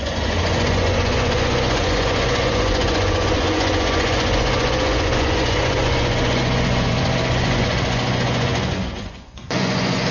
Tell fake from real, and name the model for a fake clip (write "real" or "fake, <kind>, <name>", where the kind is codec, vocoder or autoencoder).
fake, vocoder, Vocos